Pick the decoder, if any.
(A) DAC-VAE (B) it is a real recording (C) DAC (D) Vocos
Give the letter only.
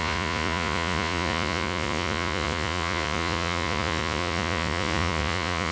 D